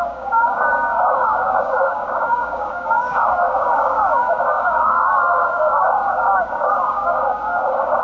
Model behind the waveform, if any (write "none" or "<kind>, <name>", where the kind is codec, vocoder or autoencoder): codec, DAC